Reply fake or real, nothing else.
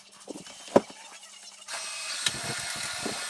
real